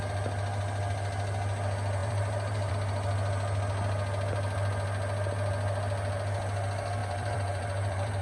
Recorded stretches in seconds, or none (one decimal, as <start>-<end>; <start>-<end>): 0.0-2.0; 2.7-7.0

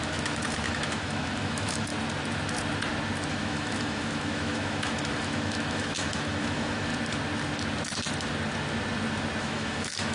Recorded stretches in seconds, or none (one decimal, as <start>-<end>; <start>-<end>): 1.9-3.3; 6.9-9.4

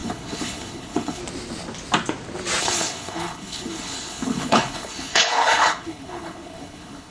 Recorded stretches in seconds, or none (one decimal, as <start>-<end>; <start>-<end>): 1.2-2.6

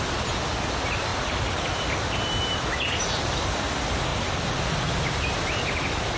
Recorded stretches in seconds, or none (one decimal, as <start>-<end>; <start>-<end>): 0.0-1.1; 1.7-4.1; 4.7-6.2

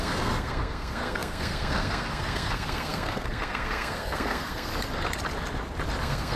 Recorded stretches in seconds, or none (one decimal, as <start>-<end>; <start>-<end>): 4.7-6.0